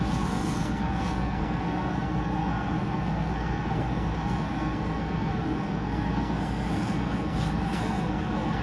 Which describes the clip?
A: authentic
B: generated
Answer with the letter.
B